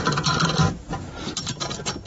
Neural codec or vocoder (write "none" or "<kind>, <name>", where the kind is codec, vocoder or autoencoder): none